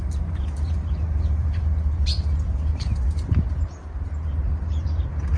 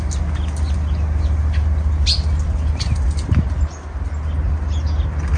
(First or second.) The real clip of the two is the second